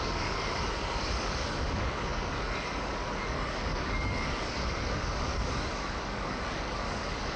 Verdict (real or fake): fake